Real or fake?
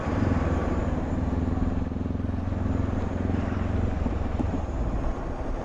fake